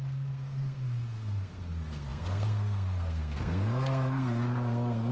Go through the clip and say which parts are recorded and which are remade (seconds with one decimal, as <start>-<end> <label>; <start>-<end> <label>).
0.0-5.1 remade